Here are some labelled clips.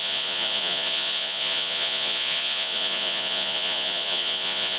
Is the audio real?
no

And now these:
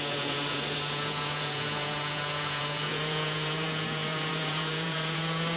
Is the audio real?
no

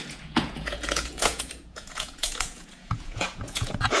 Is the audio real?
no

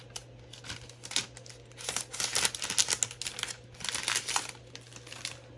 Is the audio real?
yes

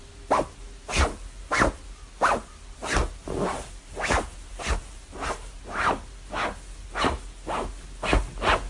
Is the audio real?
yes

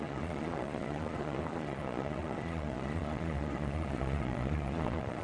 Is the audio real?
no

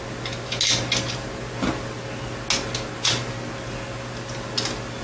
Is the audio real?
yes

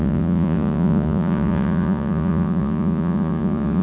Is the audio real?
no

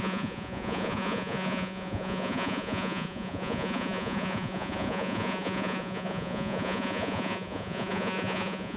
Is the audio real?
no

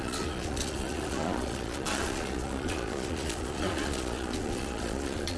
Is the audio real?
no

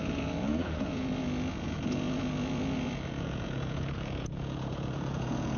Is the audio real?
no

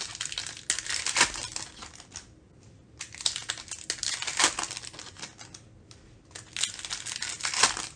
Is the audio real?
yes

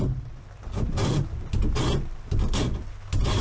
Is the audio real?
yes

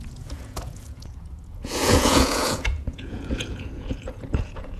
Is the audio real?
no